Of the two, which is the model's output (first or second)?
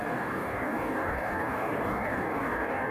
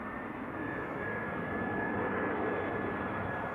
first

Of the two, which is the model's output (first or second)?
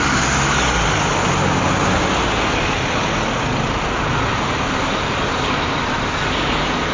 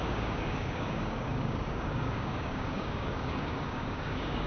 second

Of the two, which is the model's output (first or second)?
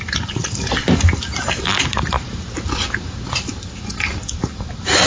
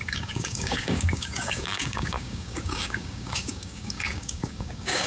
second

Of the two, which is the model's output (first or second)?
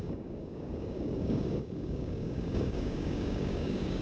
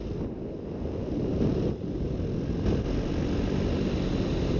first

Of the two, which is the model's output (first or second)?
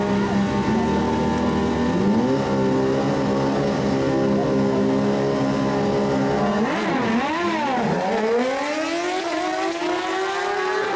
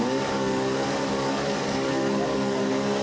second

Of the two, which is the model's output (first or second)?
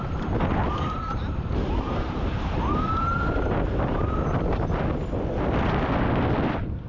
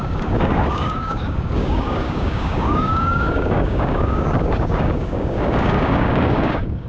second